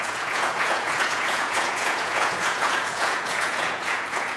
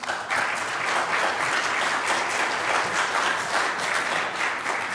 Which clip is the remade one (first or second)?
first